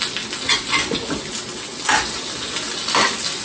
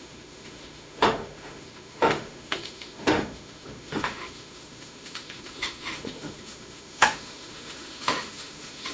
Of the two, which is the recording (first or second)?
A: first